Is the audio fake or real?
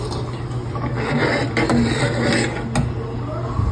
real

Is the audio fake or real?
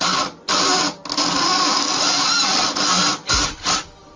real